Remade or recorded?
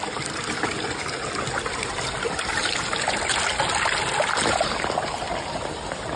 recorded